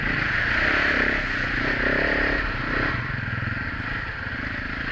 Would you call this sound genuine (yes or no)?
yes